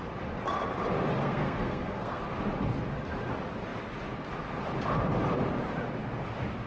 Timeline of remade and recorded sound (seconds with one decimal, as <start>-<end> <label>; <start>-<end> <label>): 0.0-1.2 recorded; 1.2-2.2 remade; 2.2-6.7 recorded